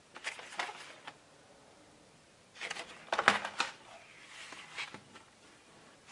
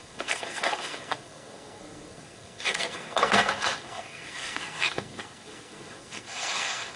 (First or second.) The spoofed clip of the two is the second